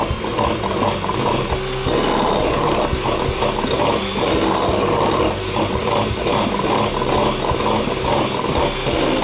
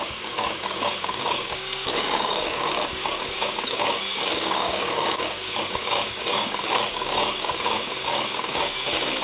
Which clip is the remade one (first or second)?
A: second